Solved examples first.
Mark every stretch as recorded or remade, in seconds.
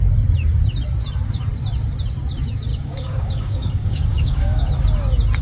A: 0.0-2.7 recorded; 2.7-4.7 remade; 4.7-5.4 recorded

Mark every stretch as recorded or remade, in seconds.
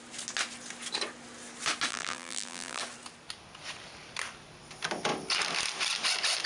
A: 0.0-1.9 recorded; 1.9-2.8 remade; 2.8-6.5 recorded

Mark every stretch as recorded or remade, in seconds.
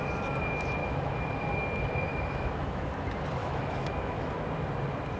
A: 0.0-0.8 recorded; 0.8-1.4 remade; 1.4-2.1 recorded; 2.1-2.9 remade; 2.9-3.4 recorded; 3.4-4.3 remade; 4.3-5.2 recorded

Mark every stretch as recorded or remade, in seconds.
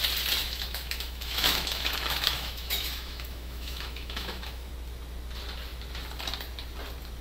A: 0.0-0.4 recorded; 0.4-4.7 remade; 4.7-7.2 recorded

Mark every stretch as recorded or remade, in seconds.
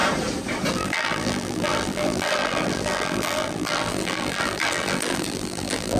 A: 0.0-0.7 recorded; 0.7-6.0 remade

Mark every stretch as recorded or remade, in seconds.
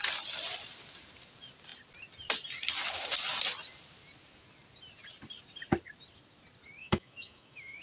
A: 0.0-6.8 recorded; 6.8-7.8 remade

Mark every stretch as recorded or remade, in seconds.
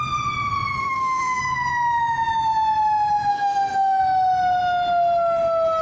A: 0.0-0.8 recorded; 0.8-1.4 remade; 1.4-3.3 recorded; 3.3-4.0 remade; 4.0-5.8 recorded